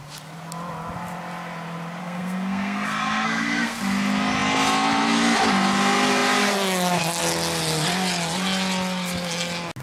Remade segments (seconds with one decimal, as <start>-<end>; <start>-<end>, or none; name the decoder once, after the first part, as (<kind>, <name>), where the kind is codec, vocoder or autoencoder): 2.0-3.8 (codec, SNAC)